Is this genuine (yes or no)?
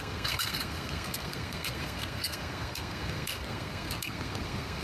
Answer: no